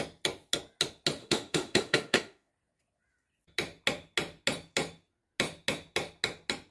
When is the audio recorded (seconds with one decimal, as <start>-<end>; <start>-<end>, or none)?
0.0-1.2; 2.5-6.7